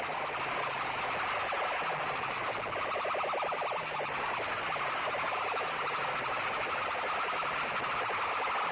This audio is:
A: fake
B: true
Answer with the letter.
B